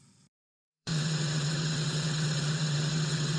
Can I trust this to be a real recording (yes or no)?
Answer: no